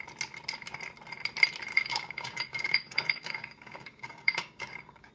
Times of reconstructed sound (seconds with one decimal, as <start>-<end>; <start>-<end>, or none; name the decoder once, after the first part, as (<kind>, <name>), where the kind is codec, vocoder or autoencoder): 1.7-5.1 (codec, DAC)